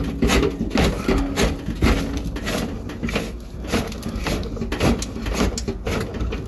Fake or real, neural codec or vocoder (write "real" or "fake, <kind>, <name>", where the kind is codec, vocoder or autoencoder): real